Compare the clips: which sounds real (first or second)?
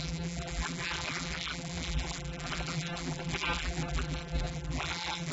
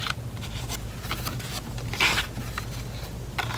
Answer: second